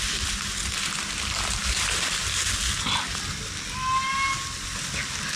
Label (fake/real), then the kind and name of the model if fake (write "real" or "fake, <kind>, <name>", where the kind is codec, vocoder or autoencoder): real